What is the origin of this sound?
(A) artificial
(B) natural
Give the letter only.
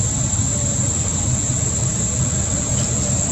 B